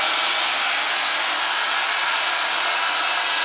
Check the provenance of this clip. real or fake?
real